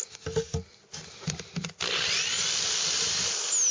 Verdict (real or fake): real